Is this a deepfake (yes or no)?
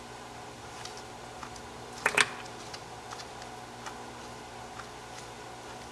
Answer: no